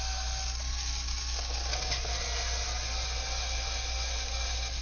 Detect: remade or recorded recorded